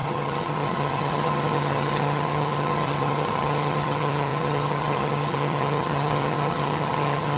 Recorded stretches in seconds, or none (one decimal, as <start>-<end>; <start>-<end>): none